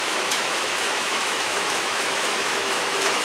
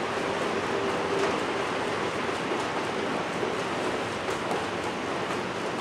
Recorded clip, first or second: second